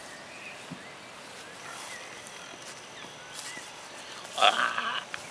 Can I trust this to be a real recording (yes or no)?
yes